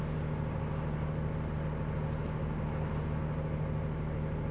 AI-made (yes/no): no